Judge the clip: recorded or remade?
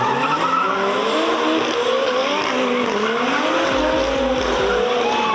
recorded